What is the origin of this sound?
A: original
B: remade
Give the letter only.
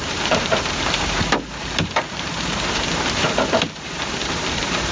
B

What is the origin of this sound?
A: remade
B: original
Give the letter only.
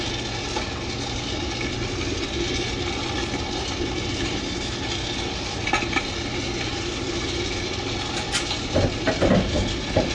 B